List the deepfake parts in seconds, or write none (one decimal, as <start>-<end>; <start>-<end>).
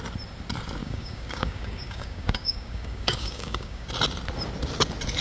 0.8-3.9